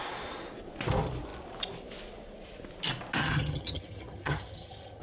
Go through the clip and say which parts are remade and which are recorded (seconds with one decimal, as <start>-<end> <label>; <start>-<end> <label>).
0.0-3.2 recorded; 3.2-5.0 remade